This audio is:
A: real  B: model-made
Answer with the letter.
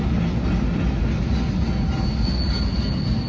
A